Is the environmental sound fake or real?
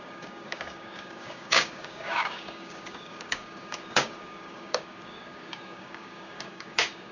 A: fake